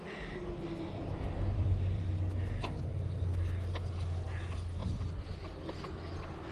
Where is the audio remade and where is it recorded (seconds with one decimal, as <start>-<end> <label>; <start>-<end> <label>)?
0.0-1.0 recorded; 1.0-2.1 remade; 2.1-6.5 recorded